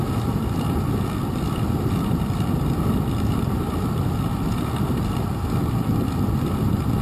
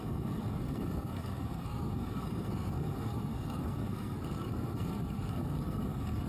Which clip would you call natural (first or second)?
first